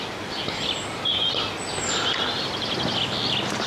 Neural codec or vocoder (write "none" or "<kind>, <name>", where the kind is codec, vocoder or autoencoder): none